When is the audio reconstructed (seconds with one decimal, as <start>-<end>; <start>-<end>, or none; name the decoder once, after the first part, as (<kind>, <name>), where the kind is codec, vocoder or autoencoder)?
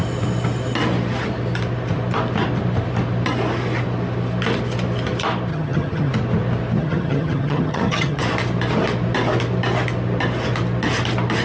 5.5-6.1 (vocoder, HiFi-GAN); 6.8-8.2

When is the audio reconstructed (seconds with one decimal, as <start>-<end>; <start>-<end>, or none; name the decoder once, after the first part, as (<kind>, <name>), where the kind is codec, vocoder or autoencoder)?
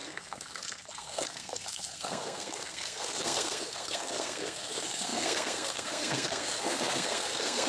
0.0-7.7 (codec, SNAC)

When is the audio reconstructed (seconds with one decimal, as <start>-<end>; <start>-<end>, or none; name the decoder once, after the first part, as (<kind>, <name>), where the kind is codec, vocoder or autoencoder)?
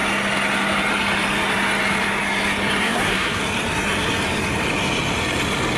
2.8-3.4 (codec, SNAC)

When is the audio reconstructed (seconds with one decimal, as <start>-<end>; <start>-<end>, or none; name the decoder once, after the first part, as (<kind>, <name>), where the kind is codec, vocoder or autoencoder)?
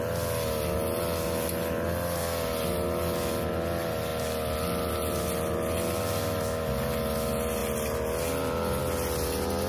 none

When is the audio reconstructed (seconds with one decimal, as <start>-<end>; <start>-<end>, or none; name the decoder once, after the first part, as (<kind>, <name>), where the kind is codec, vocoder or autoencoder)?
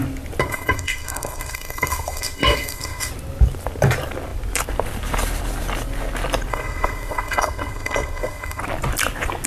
0.4-3.1 (codec, SNAC); 6.5-8.6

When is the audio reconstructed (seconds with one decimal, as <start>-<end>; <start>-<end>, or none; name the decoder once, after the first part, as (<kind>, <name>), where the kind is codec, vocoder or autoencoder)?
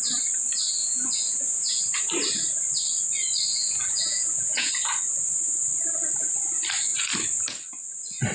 0.8-1.8 (vocoder, Vocos); 3.5-4.7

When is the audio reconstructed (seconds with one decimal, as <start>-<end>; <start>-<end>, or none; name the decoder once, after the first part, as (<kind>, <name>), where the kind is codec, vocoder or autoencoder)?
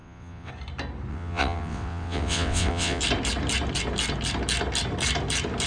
0.0-0.5 (vocoder, WaveNeXt); 1.1-3.0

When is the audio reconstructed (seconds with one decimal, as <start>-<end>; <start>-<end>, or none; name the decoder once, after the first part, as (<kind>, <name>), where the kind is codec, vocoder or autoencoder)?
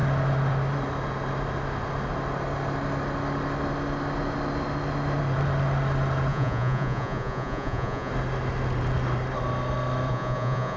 6.3-8.1 (vocoder, Vocos); 10.1-10.8